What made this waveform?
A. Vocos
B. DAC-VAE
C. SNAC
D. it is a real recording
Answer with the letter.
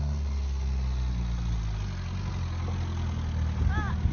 D